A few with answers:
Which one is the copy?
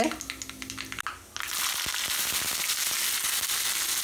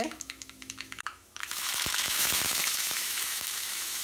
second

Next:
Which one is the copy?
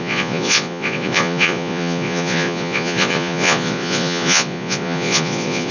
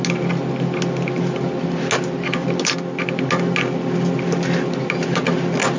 first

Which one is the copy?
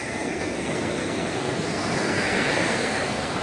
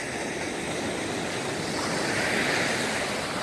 first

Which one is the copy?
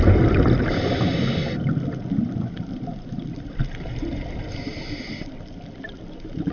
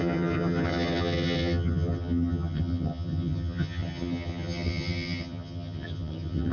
second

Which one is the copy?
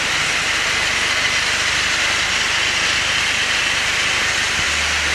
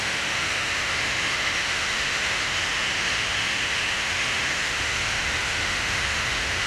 second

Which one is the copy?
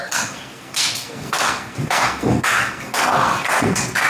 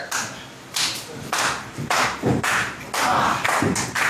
first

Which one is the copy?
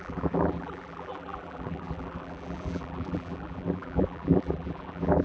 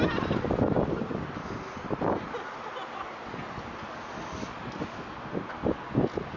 first